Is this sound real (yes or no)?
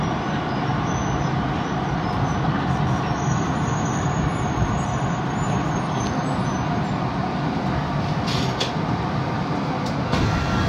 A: yes